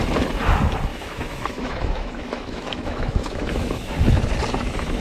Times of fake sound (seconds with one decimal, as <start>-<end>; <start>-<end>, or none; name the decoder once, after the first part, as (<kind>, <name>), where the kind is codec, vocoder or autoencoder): 0.9-3.9 (autoencoder, DAC-VAE)